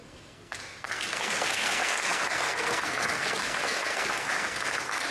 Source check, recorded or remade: remade